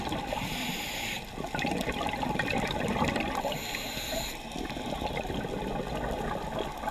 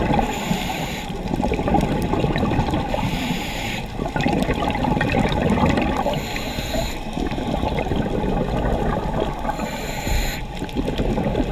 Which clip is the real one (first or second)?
first